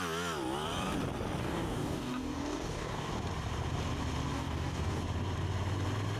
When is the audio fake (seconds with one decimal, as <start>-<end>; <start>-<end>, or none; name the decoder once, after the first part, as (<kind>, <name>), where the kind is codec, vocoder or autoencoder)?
1.4-3.1 (codec, DAC); 4.3-5.0